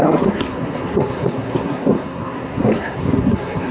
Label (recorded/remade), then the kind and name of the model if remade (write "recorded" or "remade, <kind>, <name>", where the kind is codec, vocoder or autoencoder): remade, codec, SNAC